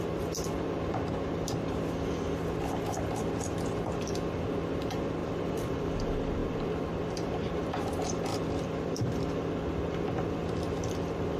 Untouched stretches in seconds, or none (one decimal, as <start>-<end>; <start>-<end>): 0.0-5.2; 5.8-8.3; 9.3-11.4